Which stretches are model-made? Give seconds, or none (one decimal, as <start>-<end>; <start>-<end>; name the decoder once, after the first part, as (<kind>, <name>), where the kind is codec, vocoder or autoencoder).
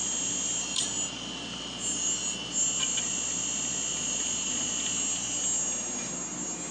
3.9-4.7 (vocoder, Vocos)